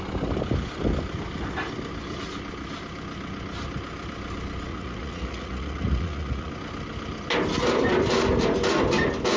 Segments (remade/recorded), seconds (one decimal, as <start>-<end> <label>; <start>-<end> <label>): 0.0-4.7 recorded; 4.7-6.5 remade; 6.5-9.4 recorded